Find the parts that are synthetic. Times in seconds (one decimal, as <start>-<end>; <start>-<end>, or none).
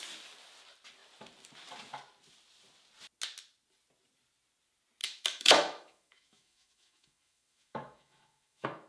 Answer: 5.0-8.9